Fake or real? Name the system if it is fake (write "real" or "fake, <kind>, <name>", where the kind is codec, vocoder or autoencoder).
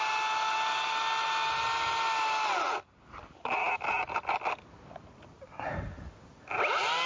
real